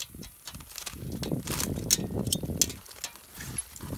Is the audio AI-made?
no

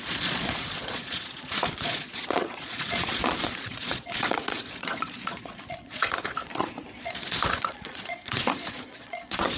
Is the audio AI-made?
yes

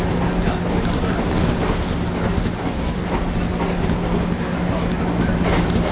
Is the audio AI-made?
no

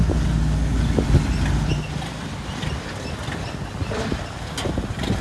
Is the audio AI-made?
no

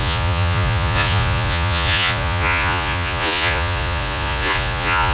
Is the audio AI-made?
yes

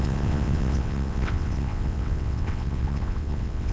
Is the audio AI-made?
yes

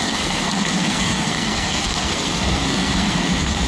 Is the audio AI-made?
yes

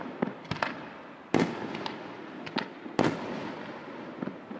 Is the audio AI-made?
no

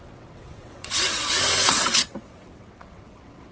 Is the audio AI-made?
yes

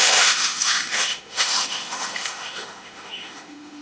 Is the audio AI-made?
yes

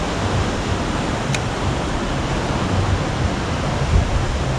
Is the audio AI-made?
no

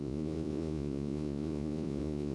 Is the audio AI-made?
yes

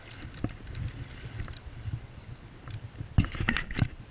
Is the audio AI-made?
no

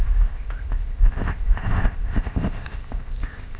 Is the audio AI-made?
yes